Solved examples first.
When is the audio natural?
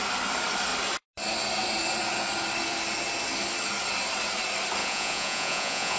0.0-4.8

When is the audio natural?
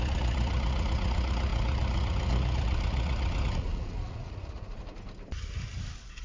4.8-6.2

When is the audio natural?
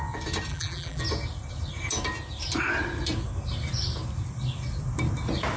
0.0-0.5; 1.0-5.6